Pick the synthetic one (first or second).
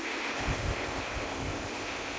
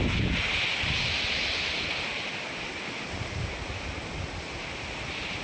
first